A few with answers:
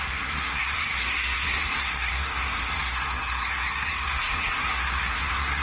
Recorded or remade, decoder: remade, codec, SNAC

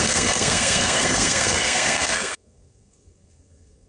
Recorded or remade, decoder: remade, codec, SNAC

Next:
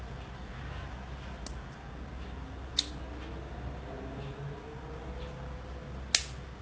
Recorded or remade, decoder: recorded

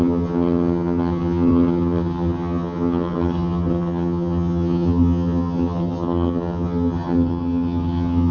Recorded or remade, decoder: remade, vocoder, HiFi-GAN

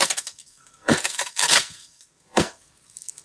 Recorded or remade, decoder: remade, codec, SNAC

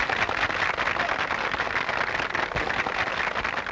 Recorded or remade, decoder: recorded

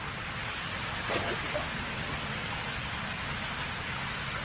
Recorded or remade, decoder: recorded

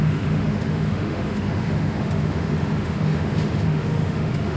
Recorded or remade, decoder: remade, autoencoder, DAC-VAE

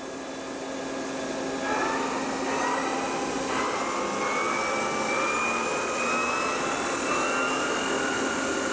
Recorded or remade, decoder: recorded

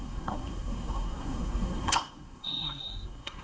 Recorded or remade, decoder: remade, codec, SNAC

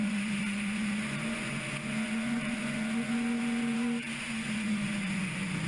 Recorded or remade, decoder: remade, vocoder, Vocos